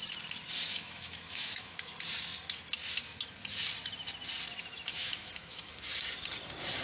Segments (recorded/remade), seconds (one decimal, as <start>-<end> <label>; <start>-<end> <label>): 0.0-0.7 recorded; 0.7-1.9 remade; 1.9-4.9 recorded; 4.9-5.7 remade; 5.7-6.8 recorded

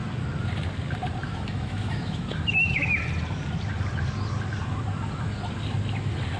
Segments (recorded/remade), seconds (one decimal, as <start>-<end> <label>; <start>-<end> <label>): 0.0-1.2 recorded; 1.2-3.0 remade; 3.0-6.4 recorded